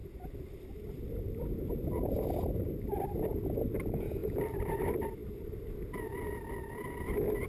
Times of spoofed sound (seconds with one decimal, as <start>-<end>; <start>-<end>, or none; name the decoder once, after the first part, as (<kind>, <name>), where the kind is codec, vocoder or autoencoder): 0.0-3.4 (vocoder, BigVGAN v2); 4.2-4.8